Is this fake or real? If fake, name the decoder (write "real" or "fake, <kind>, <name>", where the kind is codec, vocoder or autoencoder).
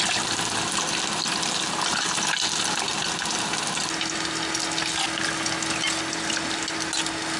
real